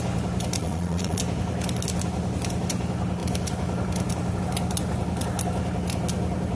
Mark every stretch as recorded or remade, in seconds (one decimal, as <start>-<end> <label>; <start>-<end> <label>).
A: 0.0-0.6 recorded; 0.6-1.2 remade; 1.2-6.6 recorded